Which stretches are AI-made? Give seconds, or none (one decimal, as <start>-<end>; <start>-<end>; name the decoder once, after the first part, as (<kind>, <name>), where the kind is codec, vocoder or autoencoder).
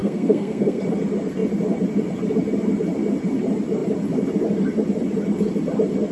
0.0-0.8 (codec, SNAC)